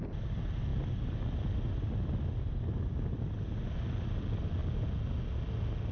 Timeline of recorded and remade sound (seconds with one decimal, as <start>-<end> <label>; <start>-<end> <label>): 0.0-5.9 recorded